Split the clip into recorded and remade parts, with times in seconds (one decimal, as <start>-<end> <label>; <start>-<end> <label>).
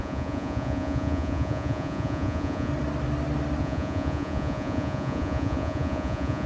0.0-2.7 remade; 2.7-3.6 recorded; 3.6-6.5 remade